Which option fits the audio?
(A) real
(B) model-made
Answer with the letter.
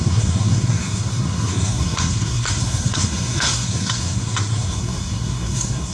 B